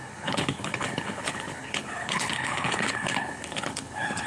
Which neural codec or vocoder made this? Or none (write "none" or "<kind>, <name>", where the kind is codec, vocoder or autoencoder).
codec, HILCodec